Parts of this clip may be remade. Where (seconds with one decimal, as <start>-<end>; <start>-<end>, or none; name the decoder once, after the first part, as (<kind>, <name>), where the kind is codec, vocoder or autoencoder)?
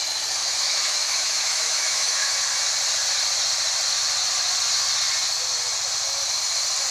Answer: 0.4-2.3 (autoencoder, DAC-VAE)